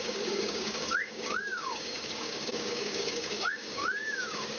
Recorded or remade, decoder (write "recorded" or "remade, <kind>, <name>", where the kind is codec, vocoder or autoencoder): remade, codec, DAC